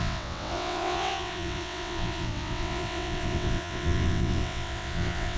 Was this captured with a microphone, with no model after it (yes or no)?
no